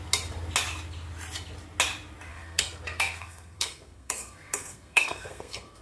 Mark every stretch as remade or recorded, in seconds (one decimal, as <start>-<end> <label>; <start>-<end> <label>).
0.0-2.3 recorded; 2.3-5.8 remade

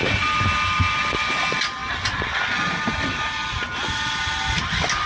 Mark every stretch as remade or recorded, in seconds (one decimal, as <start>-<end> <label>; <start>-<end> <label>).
0.0-5.1 recorded

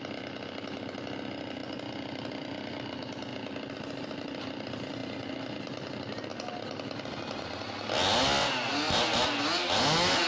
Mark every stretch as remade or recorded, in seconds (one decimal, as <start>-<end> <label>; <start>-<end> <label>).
0.0-10.3 recorded

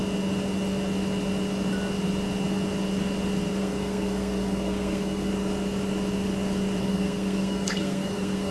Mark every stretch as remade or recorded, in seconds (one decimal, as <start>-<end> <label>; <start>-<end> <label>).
0.0-3.6 recorded; 3.6-5.3 remade; 5.3-6.8 recorded; 6.8-8.5 remade